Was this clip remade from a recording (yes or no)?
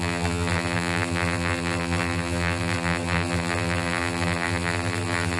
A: yes